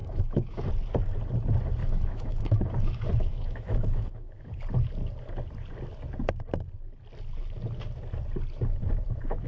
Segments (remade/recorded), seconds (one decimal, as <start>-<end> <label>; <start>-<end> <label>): 0.0-0.7 remade; 0.7-1.8 recorded; 1.8-4.6 remade; 4.6-9.5 recorded